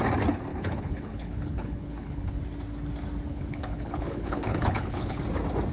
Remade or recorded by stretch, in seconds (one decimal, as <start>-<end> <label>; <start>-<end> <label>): 0.0-0.5 recorded; 0.5-2.4 remade; 2.4-3.3 recorded; 3.3-5.2 remade; 5.2-5.7 recorded